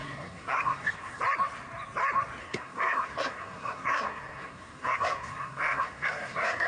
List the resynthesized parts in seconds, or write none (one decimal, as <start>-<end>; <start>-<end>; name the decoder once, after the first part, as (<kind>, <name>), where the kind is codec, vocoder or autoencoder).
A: 0.0-1.2 (codec, SNAC); 2.4-6.7